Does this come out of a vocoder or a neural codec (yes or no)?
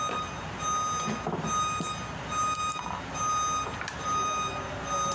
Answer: no